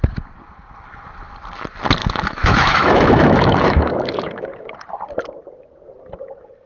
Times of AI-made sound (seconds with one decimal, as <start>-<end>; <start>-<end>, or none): 2.0-4.7